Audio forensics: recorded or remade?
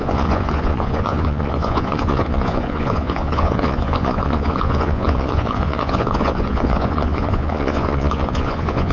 remade